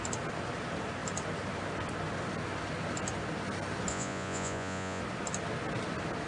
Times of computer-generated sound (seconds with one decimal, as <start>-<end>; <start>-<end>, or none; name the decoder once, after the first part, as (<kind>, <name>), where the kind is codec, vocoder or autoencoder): 3.9-5.0 (vocoder, Vocos)